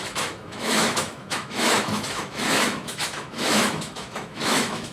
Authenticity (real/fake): fake